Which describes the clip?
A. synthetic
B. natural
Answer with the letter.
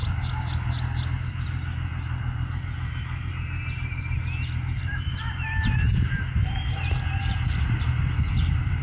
B